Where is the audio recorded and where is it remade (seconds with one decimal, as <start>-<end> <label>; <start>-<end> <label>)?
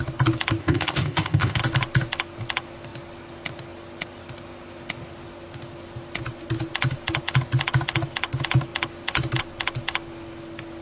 0.0-0.6 recorded; 0.6-1.6 remade; 1.6-10.8 recorded